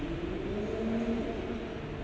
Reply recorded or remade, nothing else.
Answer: recorded